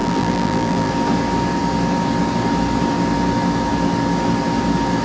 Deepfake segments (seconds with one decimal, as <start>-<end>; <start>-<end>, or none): 0.0-0.9